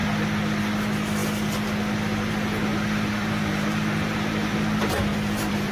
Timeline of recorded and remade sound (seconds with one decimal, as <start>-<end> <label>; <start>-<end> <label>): 0.0-2.7 recorded; 2.7-5.7 remade